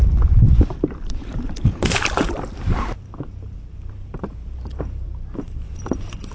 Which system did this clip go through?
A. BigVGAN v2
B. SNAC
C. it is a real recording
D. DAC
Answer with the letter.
A